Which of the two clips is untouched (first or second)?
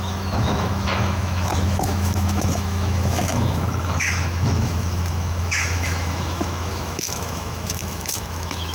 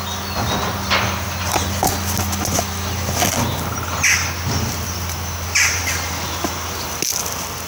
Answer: second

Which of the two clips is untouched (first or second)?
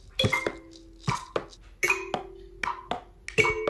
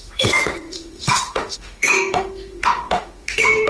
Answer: first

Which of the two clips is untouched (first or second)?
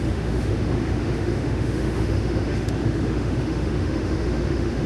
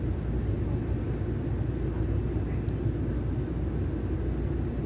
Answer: second